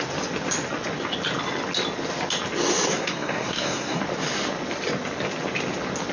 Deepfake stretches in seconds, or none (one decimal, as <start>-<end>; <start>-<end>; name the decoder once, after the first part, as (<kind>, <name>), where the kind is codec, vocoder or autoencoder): 2.9-4.0 (codec, SNAC)